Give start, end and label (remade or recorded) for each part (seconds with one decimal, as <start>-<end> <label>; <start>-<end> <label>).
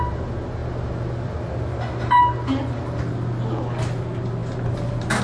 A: 0.0-5.2 recorded